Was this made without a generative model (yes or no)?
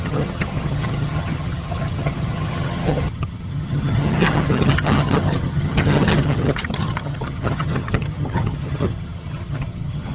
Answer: no